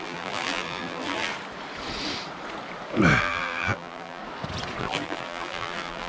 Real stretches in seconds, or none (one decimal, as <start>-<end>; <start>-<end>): 1.3-3.2; 4.2-4.8